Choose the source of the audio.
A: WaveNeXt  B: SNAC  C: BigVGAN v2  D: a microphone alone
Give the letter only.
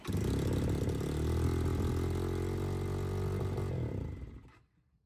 D